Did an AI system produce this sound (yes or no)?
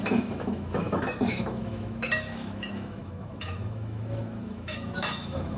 yes